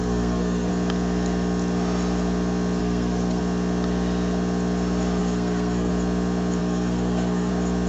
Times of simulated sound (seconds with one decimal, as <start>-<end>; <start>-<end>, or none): 0.0-0.7; 2.8-3.4; 5.2-5.9; 6.6-7.5